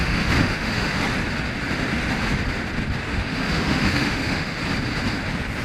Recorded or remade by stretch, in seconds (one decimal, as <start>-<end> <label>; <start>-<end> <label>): 0.0-1.0 remade; 1.0-3.1 recorded; 3.1-4.6 remade; 4.6-5.6 recorded